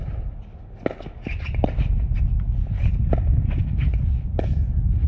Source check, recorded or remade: recorded